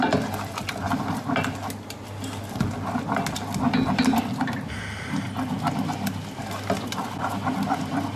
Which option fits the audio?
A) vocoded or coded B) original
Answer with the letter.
B